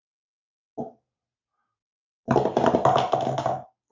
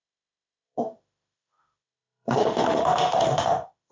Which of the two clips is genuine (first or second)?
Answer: first